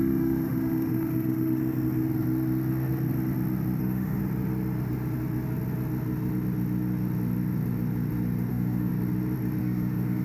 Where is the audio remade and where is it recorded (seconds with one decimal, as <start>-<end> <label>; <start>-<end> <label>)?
0.0-1.6 remade; 1.6-3.8 recorded; 3.8-4.2 remade; 4.2-8.5 recorded; 8.5-8.9 remade; 8.9-9.6 recorded; 9.6-10.2 remade